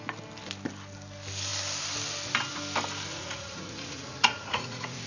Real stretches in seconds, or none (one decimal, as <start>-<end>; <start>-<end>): 0.0-3.1

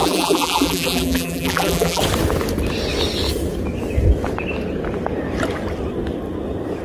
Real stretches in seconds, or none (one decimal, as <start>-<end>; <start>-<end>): 2.0-6.8

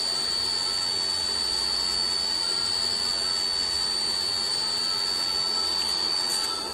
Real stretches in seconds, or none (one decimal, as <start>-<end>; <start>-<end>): 0.0-6.7

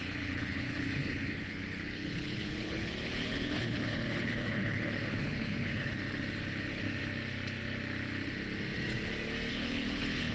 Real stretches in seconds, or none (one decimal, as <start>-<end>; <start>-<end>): 6.0-9.5